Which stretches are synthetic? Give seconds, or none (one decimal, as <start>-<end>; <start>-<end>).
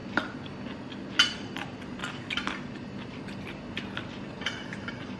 1.3-2.0; 4.3-5.2